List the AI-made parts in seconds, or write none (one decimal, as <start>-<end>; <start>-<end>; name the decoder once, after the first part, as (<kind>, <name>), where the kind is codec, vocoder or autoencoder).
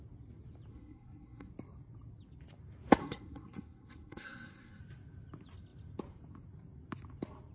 0.7-1.5 (codec, SNAC); 3.0-4.8